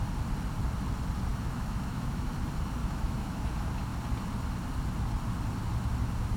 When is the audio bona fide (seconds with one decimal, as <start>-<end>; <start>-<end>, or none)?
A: 0.0-1.3; 2.3-2.8; 3.5-6.4